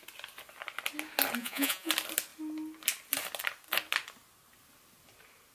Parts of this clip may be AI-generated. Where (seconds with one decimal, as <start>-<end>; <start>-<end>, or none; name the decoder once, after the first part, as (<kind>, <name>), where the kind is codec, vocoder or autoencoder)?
1.4-1.9 (vocoder, Vocos)